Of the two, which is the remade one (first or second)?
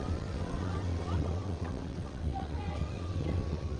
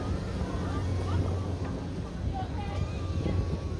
first